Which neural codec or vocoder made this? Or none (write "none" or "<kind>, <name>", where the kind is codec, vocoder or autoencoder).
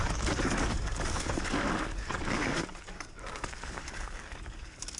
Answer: codec, DAC